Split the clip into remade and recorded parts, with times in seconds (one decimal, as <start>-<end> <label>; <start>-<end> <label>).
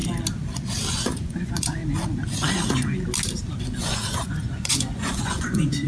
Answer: 0.0-0.9 recorded; 0.9-1.8 remade; 1.8-3.8 recorded; 3.8-5.9 remade